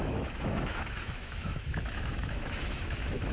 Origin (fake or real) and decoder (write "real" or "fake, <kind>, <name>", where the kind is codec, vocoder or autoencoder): fake, autoencoder, DAC-VAE